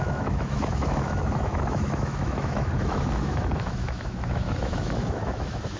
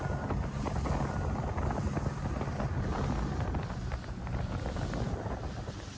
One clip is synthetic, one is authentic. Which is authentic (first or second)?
second